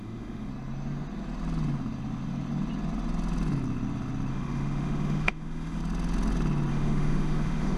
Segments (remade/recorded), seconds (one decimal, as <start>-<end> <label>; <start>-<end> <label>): 0.0-0.5 remade; 0.5-4.3 recorded; 4.3-5.8 remade; 5.8-6.7 recorded; 6.7-7.8 remade